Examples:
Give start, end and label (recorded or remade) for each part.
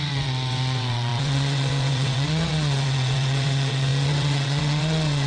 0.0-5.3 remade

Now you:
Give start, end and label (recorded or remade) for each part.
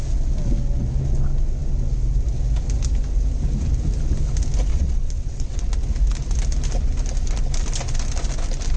0.0-4.7 recorded; 4.7-5.7 remade; 5.7-8.8 recorded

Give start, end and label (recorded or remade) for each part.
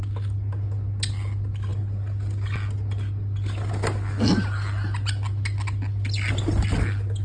0.0-7.2 recorded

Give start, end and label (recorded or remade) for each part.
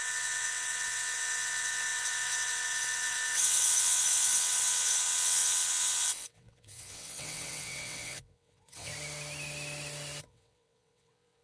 0.0-8.9 remade; 8.9-10.2 recorded; 10.2-11.4 remade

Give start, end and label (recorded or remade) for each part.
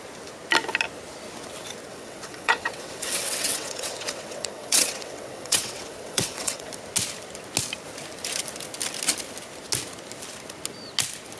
0.0-1.9 recorded; 1.9-6.7 remade; 6.7-11.4 recorded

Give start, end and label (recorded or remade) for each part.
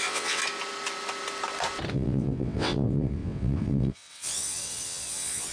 0.0-0.4 remade; 0.4-1.9 recorded; 1.9-5.5 remade